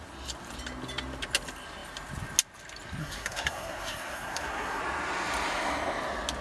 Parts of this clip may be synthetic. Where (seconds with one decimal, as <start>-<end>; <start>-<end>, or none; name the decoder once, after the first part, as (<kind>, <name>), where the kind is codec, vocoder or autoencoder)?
3.0-4.8 (codec, SNAC)